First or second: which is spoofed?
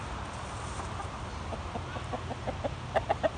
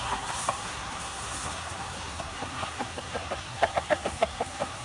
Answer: second